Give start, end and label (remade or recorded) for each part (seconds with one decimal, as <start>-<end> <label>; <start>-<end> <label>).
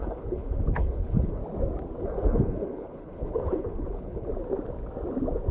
0.0-1.4 remade; 1.4-2.0 recorded; 2.0-4.3 remade; 4.3-5.5 recorded